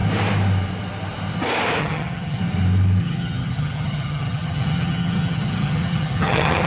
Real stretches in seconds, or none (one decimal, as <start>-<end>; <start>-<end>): 0.0-1.8; 2.4-3.0